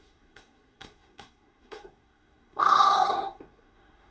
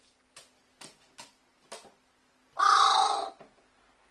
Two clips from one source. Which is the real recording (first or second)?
second